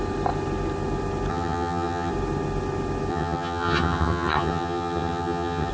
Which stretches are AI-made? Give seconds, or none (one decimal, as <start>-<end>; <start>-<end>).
1.3-2.1; 3.1-5.7